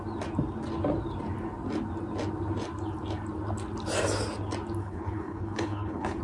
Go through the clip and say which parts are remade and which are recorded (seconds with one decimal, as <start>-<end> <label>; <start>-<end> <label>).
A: 0.0-4.8 recorded; 4.8-6.2 remade